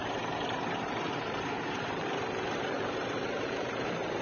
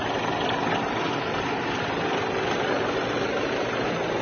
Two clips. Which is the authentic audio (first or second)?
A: second